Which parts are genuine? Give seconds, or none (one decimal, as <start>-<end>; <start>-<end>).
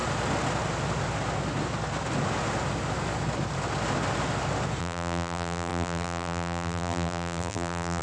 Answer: 0.0-4.8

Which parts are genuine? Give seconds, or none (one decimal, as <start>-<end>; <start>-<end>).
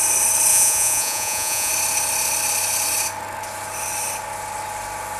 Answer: 0.0-0.5; 1.7-5.2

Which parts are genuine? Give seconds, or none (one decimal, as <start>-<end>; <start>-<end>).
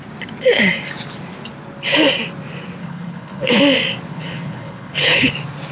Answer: 0.0-2.8; 3.6-4.1; 5.3-5.7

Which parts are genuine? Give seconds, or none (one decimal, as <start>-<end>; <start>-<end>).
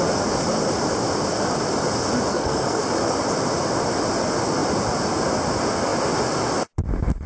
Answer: 0.0-2.3; 2.8-7.3